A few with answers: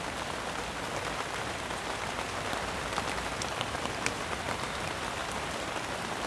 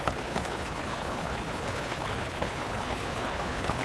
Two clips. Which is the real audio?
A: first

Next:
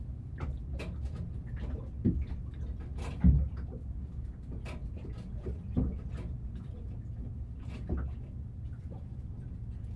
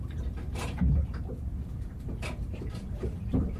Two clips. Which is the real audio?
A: first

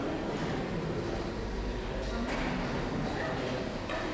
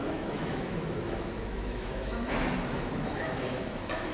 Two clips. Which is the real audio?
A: first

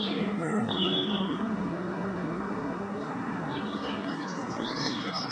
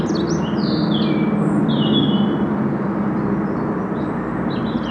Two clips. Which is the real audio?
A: second